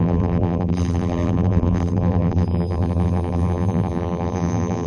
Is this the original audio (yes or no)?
no